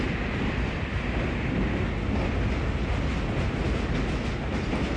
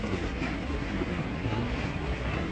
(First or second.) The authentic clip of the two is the first